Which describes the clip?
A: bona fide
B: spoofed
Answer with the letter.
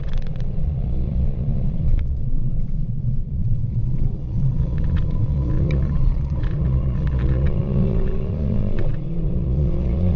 B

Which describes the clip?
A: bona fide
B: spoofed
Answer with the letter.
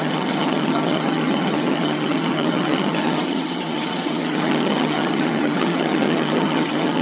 B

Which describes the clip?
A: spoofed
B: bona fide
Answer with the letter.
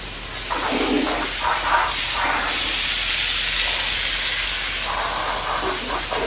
B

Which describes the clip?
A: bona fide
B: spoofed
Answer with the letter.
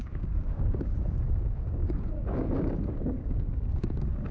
B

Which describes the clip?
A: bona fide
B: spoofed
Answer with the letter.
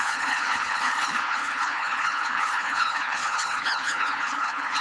B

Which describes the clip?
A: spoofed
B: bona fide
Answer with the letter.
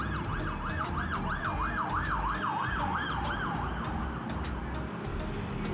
B